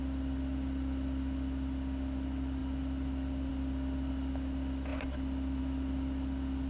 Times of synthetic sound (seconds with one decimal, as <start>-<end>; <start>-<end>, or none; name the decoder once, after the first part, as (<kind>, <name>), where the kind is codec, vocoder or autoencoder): none